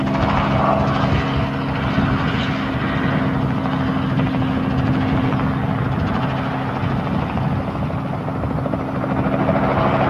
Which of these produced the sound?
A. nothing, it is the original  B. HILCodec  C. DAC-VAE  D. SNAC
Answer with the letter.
A